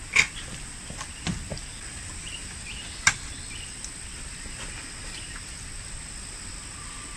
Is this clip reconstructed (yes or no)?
no